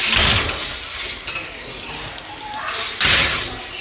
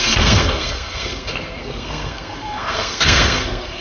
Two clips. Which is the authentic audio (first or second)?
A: first